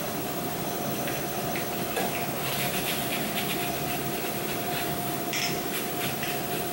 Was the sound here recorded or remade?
recorded